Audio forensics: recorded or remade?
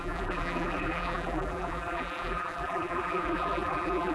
remade